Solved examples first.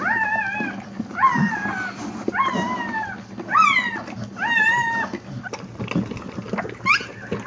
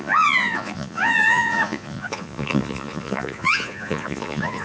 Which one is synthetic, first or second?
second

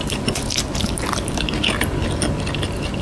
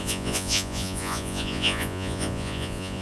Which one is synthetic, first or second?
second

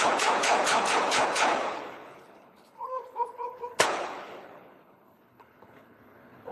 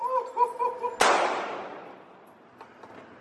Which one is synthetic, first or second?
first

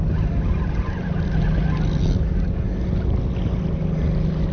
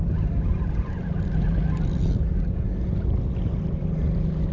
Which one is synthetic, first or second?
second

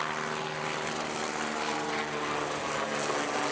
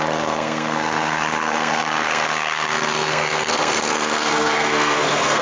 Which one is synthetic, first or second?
second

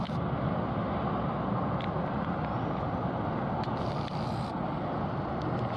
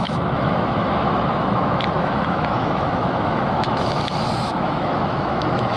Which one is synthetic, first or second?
second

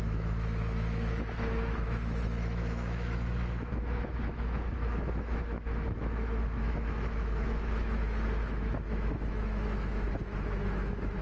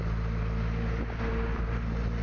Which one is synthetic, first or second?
first